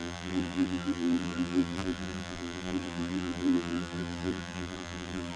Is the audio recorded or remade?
remade